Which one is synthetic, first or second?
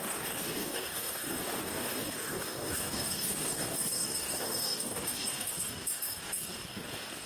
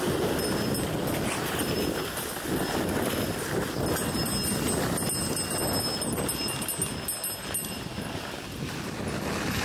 first